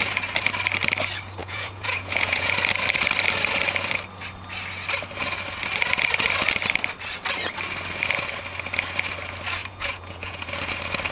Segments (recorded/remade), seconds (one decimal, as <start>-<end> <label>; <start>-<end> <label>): 0.0-1.4 recorded; 1.4-2.5 remade; 2.5-9.6 recorded; 9.6-10.5 remade; 10.5-11.1 recorded